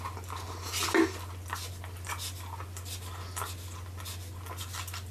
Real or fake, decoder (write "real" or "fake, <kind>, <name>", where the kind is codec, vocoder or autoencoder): real